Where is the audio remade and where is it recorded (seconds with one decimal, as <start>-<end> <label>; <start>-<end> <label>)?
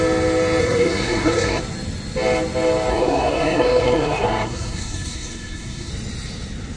0.0-0.6 recorded; 0.6-1.6 remade; 1.6-2.9 recorded; 2.9-5.9 remade; 5.9-6.8 recorded